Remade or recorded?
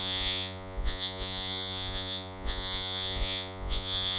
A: remade